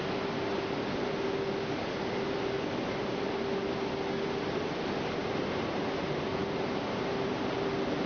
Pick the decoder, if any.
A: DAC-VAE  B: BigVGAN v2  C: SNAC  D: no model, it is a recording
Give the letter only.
D